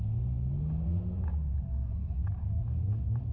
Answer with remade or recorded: recorded